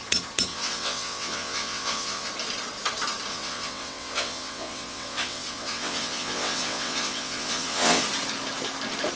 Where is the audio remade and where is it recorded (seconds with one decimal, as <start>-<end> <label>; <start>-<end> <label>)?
0.0-0.5 recorded; 0.5-2.3 remade; 2.3-3.3 recorded; 3.3-8.0 remade; 8.0-9.2 recorded